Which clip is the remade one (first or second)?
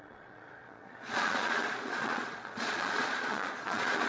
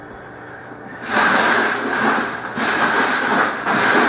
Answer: first